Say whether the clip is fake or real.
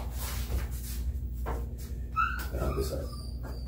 real